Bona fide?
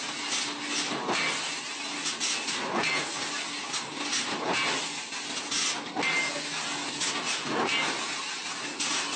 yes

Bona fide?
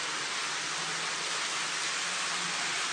yes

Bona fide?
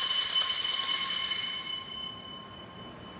yes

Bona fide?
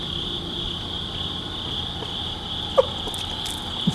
yes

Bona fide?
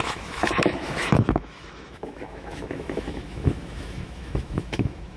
no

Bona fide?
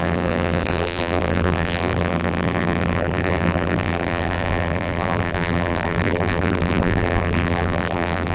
no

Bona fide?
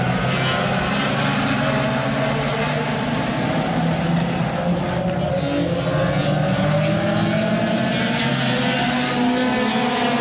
yes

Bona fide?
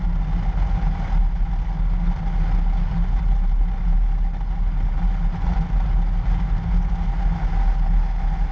yes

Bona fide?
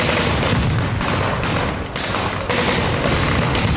yes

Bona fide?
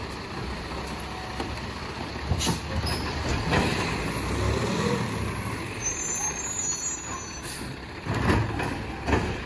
yes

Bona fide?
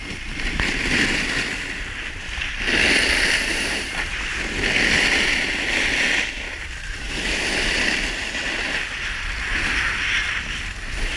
yes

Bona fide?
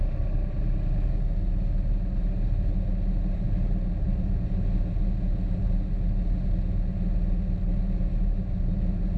yes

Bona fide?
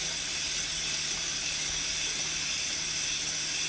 yes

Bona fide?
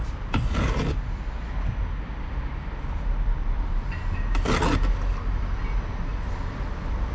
yes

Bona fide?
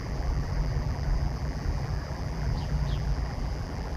no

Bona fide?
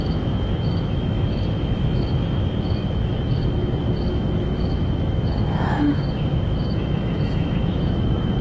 no